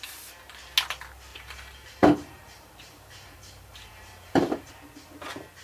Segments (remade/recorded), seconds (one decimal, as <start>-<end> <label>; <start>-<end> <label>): 0.0-1.3 recorded; 1.3-4.7 remade; 4.7-5.6 recorded